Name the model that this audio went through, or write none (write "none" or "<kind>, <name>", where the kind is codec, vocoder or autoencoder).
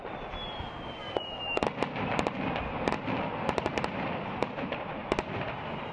none